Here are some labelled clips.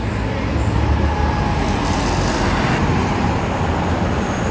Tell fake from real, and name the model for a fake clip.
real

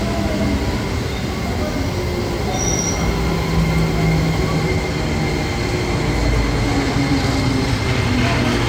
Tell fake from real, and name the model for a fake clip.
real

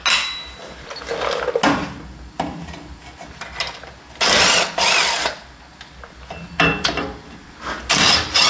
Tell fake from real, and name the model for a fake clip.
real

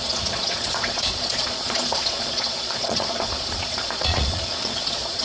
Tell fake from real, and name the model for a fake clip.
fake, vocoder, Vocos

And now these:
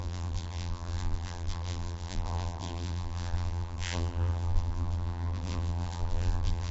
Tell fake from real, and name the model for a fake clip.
fake, vocoder, BigVGAN v2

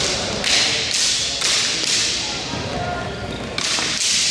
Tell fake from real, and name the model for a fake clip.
real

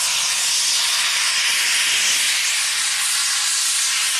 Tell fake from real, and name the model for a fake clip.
real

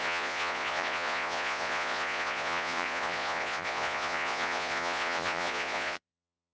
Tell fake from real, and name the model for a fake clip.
fake, vocoder, Vocos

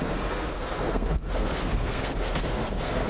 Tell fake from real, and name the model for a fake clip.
fake, codec, SNAC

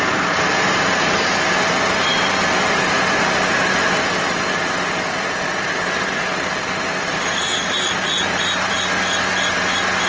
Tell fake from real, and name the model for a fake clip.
fake, vocoder, BigVGAN v2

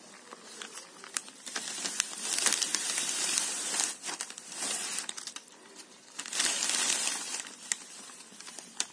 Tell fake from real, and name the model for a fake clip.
fake, vocoder, BigVGAN v2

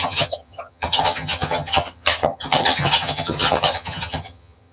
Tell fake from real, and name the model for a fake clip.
fake, vocoder, HiFi-GAN